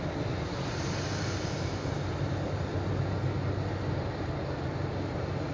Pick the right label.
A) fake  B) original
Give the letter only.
B